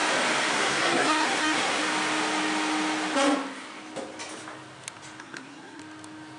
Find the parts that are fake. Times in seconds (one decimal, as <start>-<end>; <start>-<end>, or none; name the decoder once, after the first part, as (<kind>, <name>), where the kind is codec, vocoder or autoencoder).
0.5-1.8 (codec, SNAC); 5.2-5.8